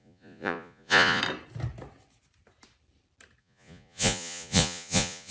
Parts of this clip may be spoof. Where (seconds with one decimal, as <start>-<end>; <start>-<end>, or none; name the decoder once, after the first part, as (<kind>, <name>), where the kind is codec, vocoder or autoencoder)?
0.0-1.2 (vocoder, Vocos); 3.4-5.3